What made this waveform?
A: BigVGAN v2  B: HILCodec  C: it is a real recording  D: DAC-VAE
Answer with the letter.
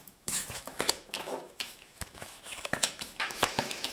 D